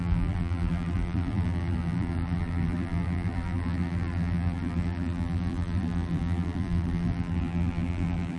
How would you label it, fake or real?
fake